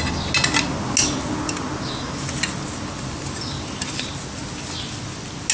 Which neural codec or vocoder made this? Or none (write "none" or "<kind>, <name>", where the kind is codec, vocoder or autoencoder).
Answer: none